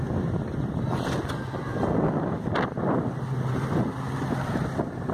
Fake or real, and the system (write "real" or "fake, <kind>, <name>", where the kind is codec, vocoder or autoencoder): real